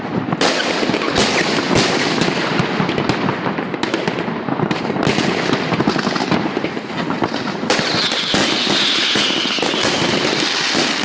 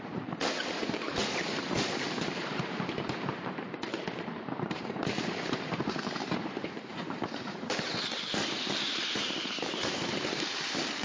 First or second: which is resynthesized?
second